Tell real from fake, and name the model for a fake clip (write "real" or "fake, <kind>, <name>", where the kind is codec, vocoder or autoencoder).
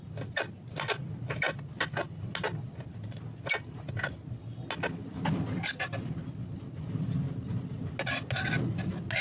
real